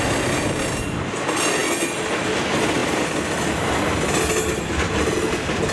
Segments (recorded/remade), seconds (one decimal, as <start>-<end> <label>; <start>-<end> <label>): 0.0-5.7 recorded